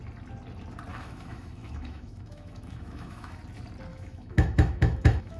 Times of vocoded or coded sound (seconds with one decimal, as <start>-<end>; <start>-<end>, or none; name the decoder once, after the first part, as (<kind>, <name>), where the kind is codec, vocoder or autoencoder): 0.9-3.4 (autoencoder, DAC-VAE); 3.9-5.4